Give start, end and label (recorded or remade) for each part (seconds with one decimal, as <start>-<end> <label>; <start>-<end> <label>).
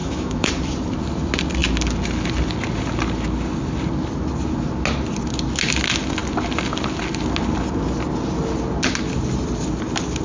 0.0-0.5 remade; 0.5-10.2 recorded